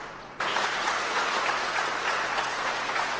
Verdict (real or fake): fake